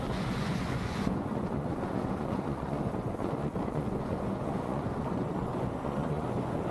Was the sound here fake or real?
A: fake